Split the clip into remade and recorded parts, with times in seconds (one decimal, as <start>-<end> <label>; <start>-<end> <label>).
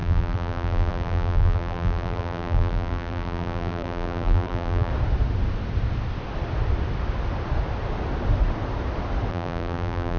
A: 0.0-4.9 remade; 4.9-9.3 recorded; 9.3-10.2 remade